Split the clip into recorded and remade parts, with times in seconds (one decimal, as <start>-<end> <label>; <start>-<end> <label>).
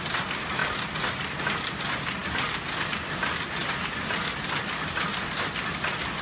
0.0-6.2 recorded